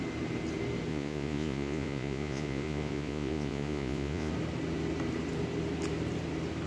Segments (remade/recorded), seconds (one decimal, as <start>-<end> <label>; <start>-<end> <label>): 0.0-0.9 recorded; 0.9-4.3 remade; 4.3-6.7 recorded